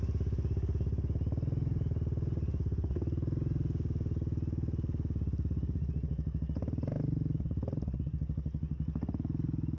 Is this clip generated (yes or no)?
no